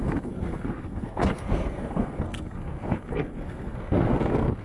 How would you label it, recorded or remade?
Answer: remade